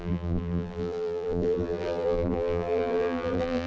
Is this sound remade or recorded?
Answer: remade